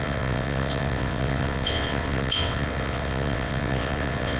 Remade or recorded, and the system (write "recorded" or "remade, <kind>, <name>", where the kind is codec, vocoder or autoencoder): remade, vocoder, WaveNeXt